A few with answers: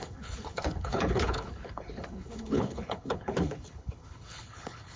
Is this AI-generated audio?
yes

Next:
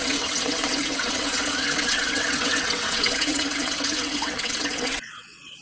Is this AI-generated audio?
yes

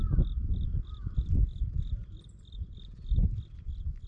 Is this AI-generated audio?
no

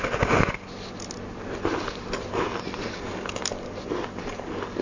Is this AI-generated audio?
no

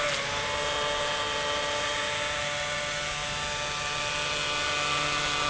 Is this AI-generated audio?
no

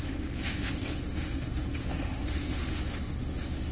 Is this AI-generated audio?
yes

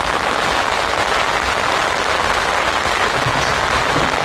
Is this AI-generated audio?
no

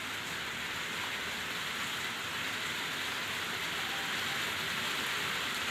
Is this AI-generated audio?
no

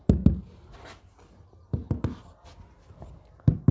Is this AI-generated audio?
no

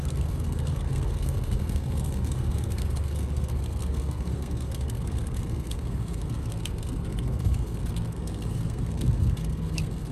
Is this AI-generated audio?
yes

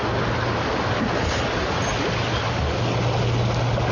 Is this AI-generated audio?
no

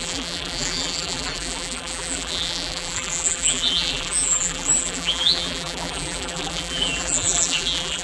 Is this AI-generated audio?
yes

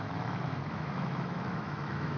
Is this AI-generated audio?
yes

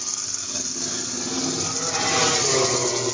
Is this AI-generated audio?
no